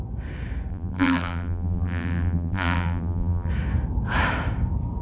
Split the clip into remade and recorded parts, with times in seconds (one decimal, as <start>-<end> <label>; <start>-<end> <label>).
0.0-0.7 recorded; 0.7-3.5 remade; 3.5-5.0 recorded